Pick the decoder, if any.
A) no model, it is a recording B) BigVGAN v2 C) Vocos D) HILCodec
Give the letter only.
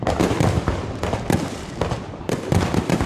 B